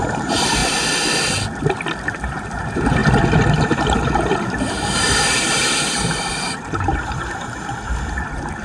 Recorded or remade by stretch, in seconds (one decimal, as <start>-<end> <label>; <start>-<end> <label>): 0.0-0.6 remade; 0.6-2.1 recorded; 2.1-3.0 remade; 3.0-3.6 recorded; 3.6-8.6 remade

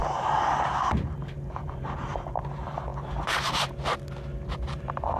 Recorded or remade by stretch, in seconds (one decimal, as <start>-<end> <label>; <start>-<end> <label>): 0.0-2.9 remade; 2.9-4.7 recorded; 4.7-5.2 remade

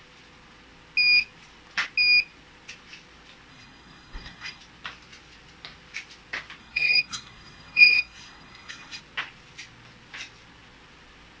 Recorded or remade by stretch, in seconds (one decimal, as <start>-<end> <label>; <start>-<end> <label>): 0.0-3.5 recorded; 3.5-4.6 remade; 4.6-6.6 recorded; 6.6-9.0 remade; 9.0-11.4 recorded

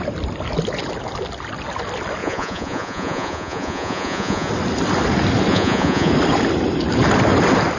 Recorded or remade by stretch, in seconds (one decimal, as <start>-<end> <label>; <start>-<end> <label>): 0.0-2.2 recorded; 2.2-4.5 remade; 4.5-5.5 recorded; 5.5-6.1 remade; 6.1-7.8 recorded

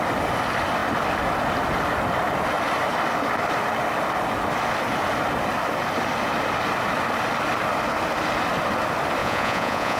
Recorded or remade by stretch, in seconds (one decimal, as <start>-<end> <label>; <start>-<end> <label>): 0.0-9.2 recorded; 9.2-10.0 remade

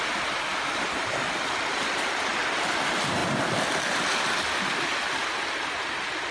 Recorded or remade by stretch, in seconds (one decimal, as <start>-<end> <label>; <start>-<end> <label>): 0.0-6.3 recorded

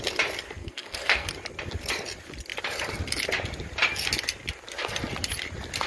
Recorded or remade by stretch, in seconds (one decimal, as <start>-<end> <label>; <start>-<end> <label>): 0.0-0.6 recorded; 0.6-1.3 remade; 1.3-5.9 recorded